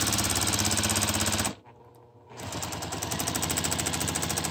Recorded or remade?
recorded